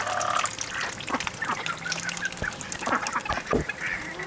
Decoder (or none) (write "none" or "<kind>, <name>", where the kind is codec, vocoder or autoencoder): none